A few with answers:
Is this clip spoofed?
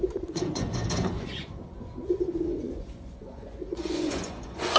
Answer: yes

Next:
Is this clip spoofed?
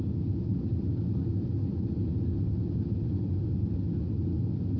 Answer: no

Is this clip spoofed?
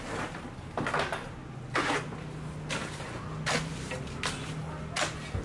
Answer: no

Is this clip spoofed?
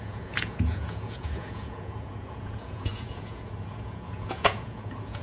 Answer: yes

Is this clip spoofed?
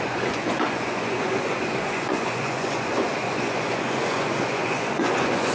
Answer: yes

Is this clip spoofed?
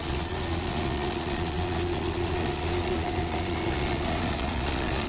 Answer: yes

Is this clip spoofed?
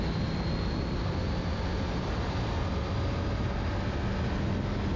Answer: no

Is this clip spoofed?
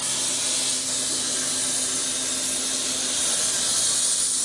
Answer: no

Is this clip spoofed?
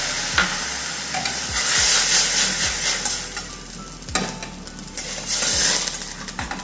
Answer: no